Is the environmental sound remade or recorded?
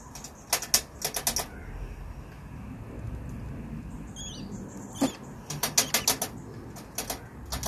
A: recorded